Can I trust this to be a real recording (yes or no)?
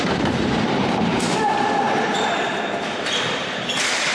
no